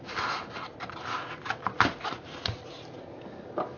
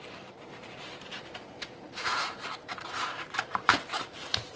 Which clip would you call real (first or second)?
first